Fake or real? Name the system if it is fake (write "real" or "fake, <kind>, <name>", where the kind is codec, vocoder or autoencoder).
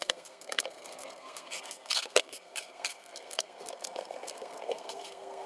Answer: fake, codec, SNAC